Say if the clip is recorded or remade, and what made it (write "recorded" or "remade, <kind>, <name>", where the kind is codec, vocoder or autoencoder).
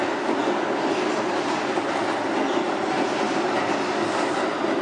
recorded